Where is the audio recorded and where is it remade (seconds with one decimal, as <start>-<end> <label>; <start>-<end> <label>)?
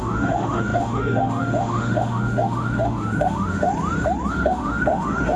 0.0-3.7 remade; 3.7-4.3 recorded; 4.3-5.4 remade